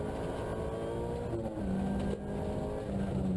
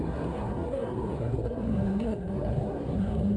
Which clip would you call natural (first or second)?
first